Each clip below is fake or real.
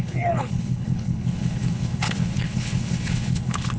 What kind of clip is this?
fake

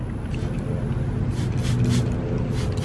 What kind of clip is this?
real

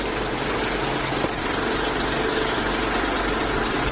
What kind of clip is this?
real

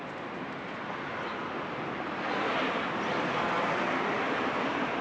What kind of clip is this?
real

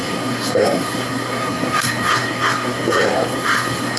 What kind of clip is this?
fake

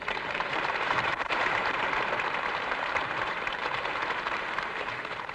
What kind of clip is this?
fake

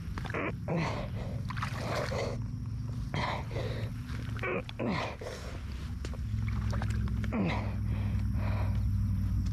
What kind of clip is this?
real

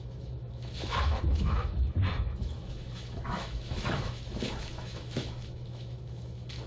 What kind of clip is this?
fake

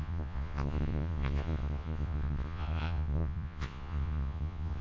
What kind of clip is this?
fake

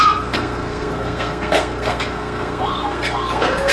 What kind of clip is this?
fake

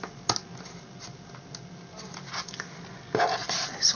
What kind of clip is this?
real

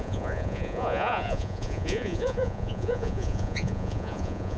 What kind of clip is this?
fake